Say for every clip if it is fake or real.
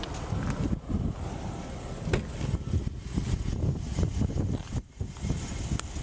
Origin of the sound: real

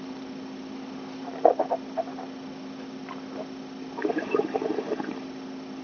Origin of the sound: real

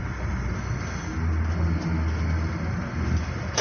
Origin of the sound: real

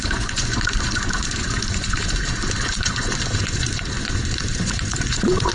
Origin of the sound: fake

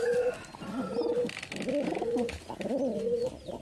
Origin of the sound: real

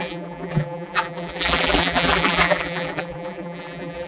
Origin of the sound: fake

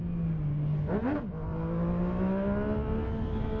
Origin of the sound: real